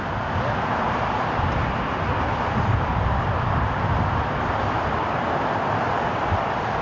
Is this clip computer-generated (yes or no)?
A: no